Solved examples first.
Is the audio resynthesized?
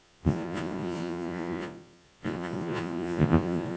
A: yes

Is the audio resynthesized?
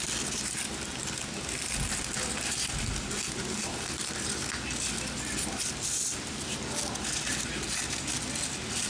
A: no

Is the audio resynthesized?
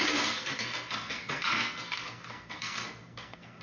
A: yes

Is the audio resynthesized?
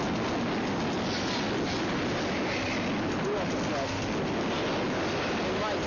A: no